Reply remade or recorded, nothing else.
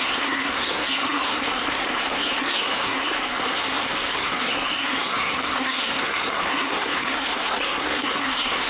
remade